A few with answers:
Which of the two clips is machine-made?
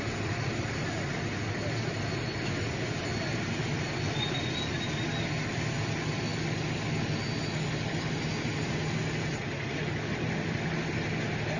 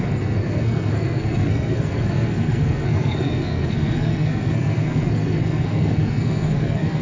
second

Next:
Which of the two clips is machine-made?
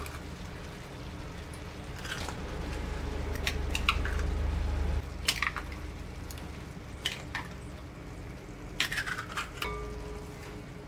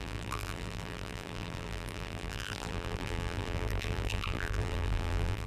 second